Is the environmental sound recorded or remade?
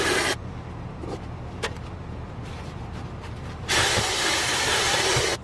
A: remade